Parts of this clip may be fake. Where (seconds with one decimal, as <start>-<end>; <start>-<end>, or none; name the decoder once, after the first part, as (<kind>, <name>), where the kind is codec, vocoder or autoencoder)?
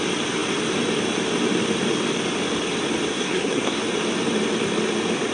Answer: 3.1-3.8 (codec, SNAC)